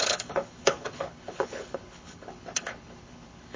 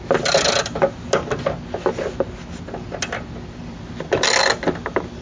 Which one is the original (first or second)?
second